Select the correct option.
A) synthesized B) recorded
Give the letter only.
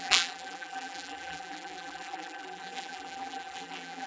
A